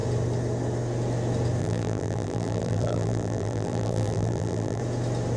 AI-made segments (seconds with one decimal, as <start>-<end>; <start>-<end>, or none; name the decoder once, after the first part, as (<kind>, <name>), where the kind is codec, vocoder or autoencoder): 1.6-4.8 (vocoder, BigVGAN v2)